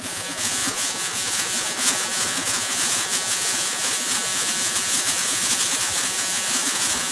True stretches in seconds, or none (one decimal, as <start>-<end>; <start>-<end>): none